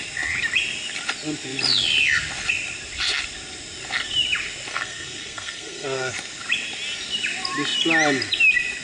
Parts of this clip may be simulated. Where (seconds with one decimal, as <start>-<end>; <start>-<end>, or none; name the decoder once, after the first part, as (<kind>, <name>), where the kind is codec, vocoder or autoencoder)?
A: 4.7-6.1 (codec, SNAC)